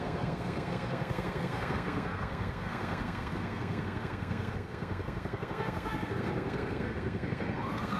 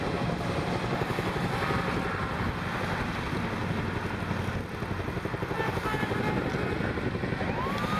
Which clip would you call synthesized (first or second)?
first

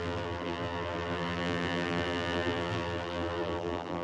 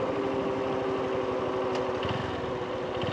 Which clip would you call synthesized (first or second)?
first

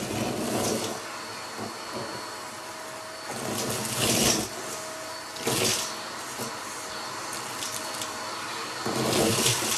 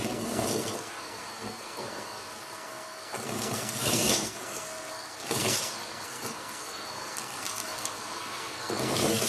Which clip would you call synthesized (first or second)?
second